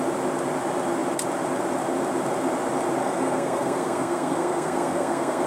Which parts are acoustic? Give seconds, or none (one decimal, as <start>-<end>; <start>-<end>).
0.0-3.0